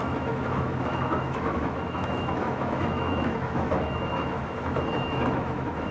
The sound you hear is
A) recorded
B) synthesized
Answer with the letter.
B